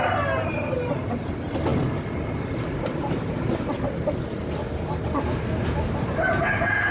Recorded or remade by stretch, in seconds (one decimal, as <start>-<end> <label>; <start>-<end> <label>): 0.0-6.9 recorded